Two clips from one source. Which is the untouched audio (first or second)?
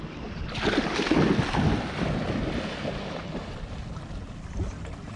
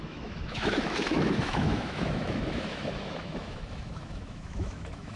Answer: first